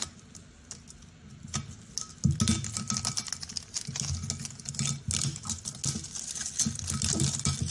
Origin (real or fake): real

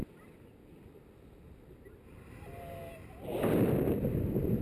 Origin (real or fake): real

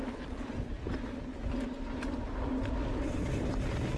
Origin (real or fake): real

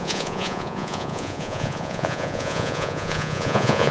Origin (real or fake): fake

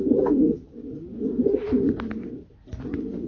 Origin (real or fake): real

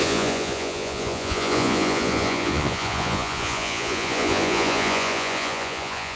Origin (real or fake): fake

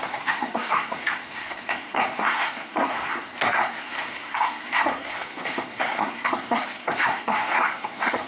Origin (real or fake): fake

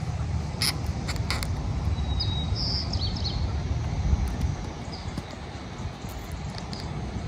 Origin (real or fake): real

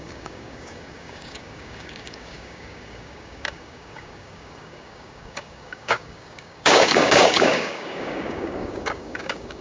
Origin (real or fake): fake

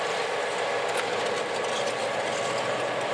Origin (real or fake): real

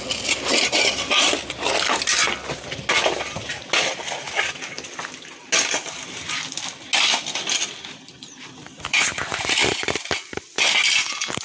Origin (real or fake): real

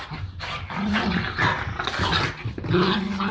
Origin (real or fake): real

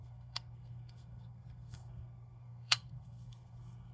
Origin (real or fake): fake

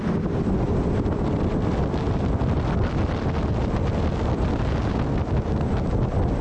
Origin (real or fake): fake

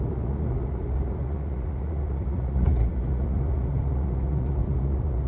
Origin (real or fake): fake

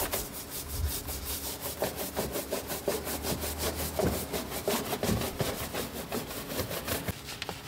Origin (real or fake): real